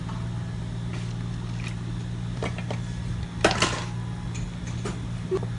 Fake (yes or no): no